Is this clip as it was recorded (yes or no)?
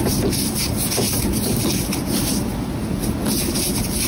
yes